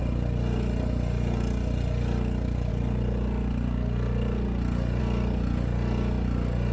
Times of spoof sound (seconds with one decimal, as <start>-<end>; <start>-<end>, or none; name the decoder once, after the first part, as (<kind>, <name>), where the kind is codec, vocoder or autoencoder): none